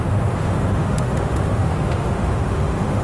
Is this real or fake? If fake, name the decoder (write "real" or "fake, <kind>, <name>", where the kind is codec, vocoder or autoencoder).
fake, autoencoder, DAC-VAE